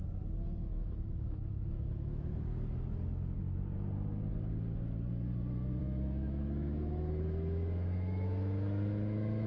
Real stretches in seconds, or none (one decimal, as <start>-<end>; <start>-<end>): 0.0-0.6; 2.6-5.8

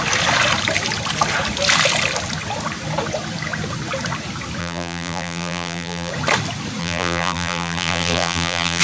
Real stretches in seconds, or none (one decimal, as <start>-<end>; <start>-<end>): 0.0-4.6; 6.1-6.8